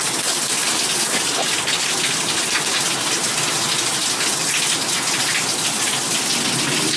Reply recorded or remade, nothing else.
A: recorded